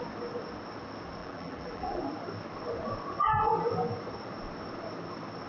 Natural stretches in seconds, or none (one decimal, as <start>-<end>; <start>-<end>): 0.0-1.2; 2.0-5.5